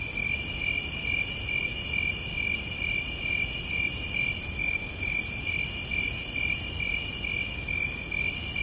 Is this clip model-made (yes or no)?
no